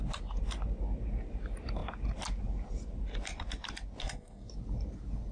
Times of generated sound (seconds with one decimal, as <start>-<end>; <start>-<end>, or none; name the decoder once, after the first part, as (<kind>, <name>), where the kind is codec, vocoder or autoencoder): 4.0-4.5 (codec, SNAC)